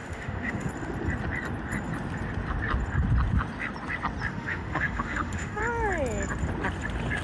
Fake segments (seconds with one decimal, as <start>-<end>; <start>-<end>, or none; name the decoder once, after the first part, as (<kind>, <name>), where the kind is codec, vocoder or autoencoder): 0.0-0.7 (autoencoder, DAC-VAE); 4.3-5.6